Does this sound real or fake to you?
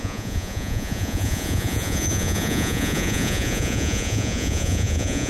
fake